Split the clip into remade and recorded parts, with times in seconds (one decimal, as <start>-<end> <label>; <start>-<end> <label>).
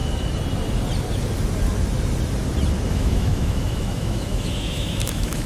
0.0-2.9 recorded; 2.9-5.5 remade